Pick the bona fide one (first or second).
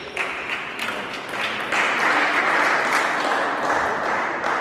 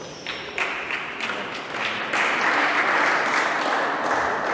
first